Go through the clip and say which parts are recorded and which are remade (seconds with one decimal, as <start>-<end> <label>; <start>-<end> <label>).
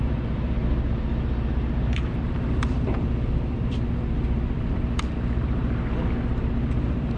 0.0-0.6 remade; 0.6-1.5 recorded; 1.5-5.6 remade; 5.6-6.4 recorded; 6.4-7.2 remade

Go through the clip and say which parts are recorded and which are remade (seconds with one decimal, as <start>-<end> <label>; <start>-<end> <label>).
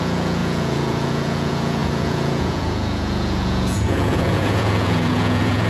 0.0-5.7 remade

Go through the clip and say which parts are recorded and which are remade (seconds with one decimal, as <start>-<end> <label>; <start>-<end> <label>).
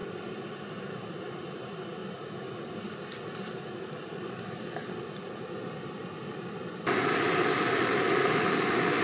0.0-9.0 recorded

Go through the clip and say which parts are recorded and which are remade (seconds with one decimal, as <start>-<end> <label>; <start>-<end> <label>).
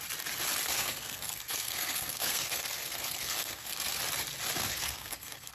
0.0-0.7 recorded; 0.7-4.0 remade; 4.0-4.7 recorded; 4.7-5.5 remade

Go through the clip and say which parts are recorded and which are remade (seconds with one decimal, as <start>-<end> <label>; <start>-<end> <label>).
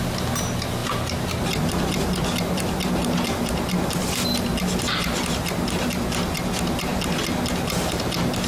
0.0-8.5 recorded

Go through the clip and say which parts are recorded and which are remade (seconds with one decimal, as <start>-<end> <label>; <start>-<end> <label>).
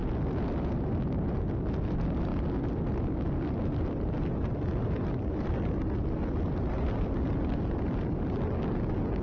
0.0-9.2 recorded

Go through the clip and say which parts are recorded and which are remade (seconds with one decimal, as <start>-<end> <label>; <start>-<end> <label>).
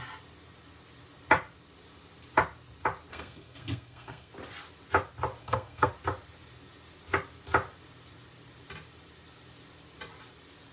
0.0-3.1 recorded; 3.1-4.3 remade; 4.3-5.4 recorded; 5.4-5.9 remade; 5.9-10.7 recorded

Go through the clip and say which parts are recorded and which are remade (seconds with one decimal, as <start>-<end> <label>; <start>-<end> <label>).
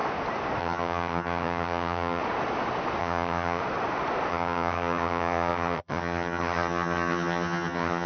0.0-0.6 recorded; 0.6-2.2 remade; 2.2-3.0 recorded; 3.0-3.6 remade; 3.6-4.3 recorded; 4.3-8.1 remade